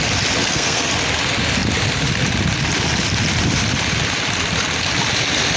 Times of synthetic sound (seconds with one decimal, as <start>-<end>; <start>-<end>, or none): 0.4-0.9